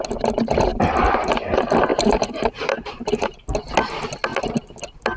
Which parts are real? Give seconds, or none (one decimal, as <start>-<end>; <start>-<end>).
0.0-0.7; 1.5-1.9; 2.7-5.2